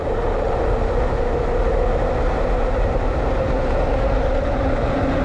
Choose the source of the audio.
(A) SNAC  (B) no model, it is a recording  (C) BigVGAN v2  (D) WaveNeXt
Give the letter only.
B